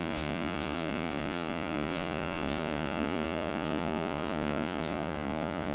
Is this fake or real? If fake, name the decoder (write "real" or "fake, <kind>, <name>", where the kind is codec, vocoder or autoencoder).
fake, vocoder, Vocos